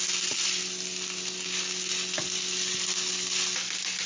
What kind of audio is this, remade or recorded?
recorded